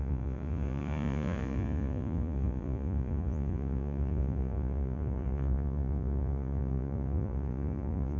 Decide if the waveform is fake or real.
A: fake